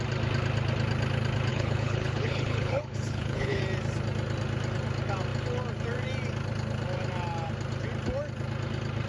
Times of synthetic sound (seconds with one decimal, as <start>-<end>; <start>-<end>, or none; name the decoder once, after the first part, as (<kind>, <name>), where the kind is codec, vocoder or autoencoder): 1.5-3.6 (codec, HILCodec)